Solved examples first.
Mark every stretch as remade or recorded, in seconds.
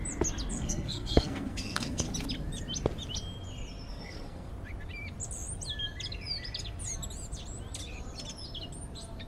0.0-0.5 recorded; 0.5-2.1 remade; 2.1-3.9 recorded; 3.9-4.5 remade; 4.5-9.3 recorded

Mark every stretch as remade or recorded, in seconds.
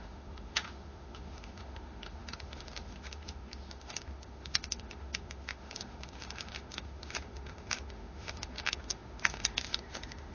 0.0-10.3 remade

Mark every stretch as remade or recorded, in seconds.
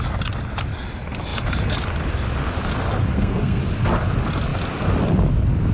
0.0-3.1 recorded; 3.1-3.6 remade; 3.6-5.7 recorded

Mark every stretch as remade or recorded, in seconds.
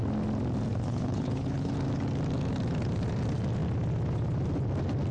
0.0-0.7 recorded; 0.7-1.7 remade; 1.7-5.1 recorded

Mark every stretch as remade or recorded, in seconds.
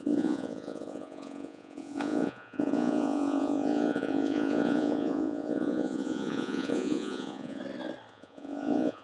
0.0-7.6 remade; 7.6-8.1 recorded; 8.1-9.0 remade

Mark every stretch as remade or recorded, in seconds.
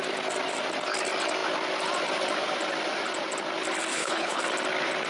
0.0-3.9 recorded; 3.9-4.4 remade; 4.4-5.1 recorded